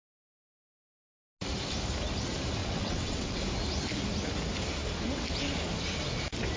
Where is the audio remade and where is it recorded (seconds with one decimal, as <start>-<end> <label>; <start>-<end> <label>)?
0.0-2.6 recorded; 2.6-3.4 remade; 3.4-6.6 recorded